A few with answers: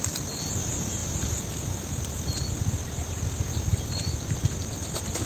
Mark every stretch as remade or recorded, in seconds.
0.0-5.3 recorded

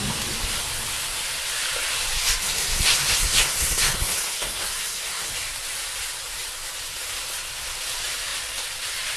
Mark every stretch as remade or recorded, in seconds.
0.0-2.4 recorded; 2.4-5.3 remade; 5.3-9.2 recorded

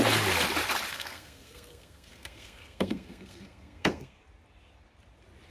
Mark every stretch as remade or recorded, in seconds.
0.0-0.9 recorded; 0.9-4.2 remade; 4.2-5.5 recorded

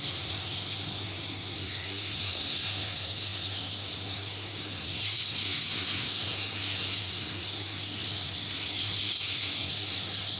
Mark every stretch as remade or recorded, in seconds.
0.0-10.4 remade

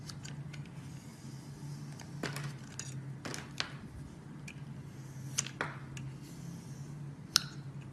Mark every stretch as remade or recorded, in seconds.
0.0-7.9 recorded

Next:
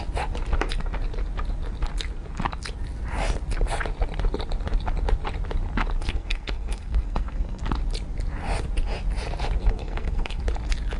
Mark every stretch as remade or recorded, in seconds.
0.0-6.0 recorded; 6.0-7.6 remade; 7.6-9.6 recorded; 9.6-10.4 remade; 10.4-11.0 recorded

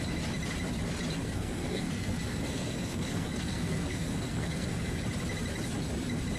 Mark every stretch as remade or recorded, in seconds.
0.0-1.2 recorded; 1.2-5.0 remade; 5.0-6.4 recorded